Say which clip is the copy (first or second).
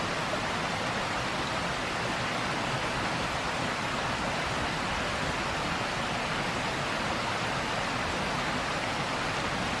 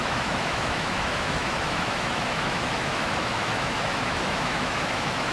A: second